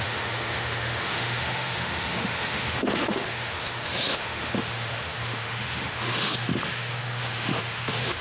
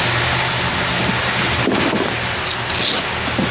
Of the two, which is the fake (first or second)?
first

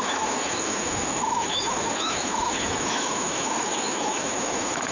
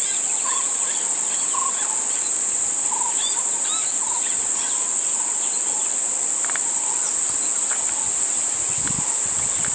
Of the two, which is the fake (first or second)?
first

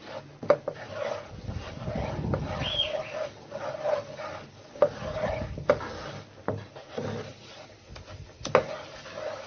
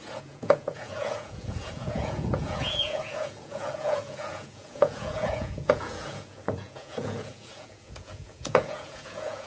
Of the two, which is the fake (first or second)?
second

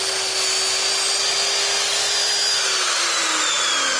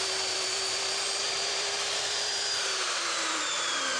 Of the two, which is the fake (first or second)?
second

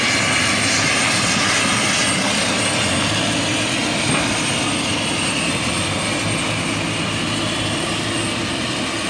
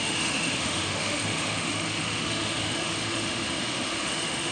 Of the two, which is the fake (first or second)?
second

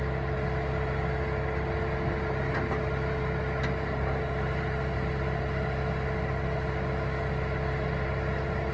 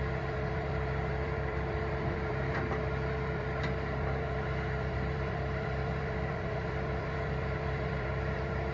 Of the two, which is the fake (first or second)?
second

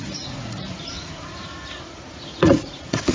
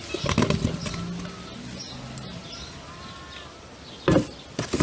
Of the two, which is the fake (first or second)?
first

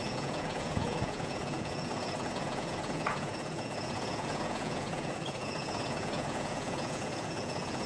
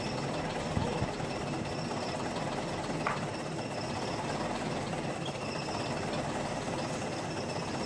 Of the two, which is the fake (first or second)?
first